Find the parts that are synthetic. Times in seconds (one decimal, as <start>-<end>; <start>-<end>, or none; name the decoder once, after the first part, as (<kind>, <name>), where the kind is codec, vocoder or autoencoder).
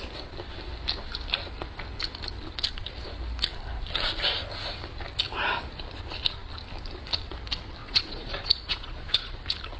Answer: 7.8-9.4 (vocoder, Vocos)